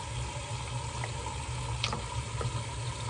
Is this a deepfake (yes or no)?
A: no